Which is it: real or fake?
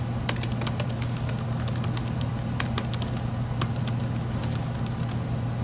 real